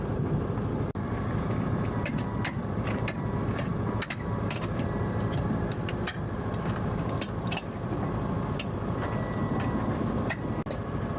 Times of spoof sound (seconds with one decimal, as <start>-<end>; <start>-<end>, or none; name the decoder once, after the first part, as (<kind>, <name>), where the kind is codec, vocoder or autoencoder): none